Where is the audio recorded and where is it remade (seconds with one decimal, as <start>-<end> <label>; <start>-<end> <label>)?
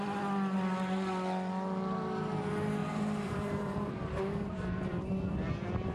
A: 0.0-2.8 recorded; 2.8-5.5 remade; 5.5-5.9 recorded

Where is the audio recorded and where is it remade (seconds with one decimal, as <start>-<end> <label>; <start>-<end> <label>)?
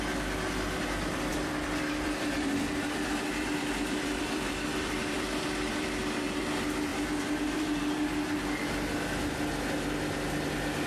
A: 0.0-1.3 recorded; 1.3-6.4 remade; 6.4-10.9 recorded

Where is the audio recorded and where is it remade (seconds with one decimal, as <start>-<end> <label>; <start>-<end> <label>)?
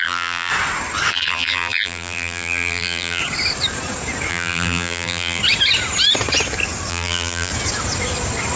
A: 0.0-0.5 remade; 0.5-1.1 recorded; 1.1-3.2 remade; 3.2-4.3 recorded; 4.3-5.4 remade; 5.4-6.9 recorded; 6.9-7.5 remade; 7.5-8.6 recorded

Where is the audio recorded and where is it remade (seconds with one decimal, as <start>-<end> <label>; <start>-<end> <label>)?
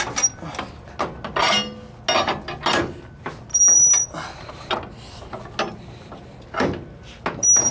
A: 0.0-7.7 recorded